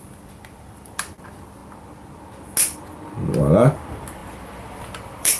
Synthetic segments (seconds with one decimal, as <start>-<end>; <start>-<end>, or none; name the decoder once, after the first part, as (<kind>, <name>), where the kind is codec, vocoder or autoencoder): 0.0-1.6 (vocoder, BigVGAN v2); 3.4-5.4